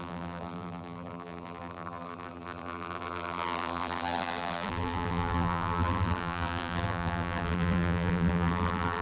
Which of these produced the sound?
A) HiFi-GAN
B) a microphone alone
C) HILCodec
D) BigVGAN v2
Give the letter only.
D